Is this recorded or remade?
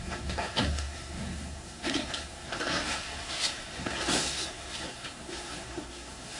remade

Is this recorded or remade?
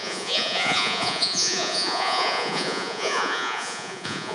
remade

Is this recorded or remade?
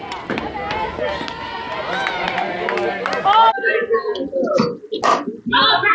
recorded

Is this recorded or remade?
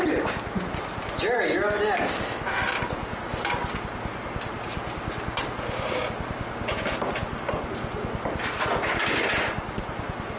recorded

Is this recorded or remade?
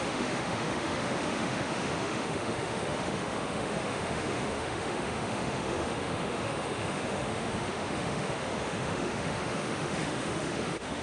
remade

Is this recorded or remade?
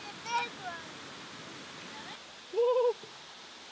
recorded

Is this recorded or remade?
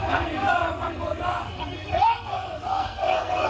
remade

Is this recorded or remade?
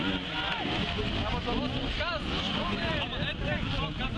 recorded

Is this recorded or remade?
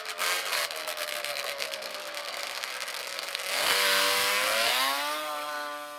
remade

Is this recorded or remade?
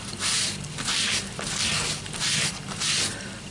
recorded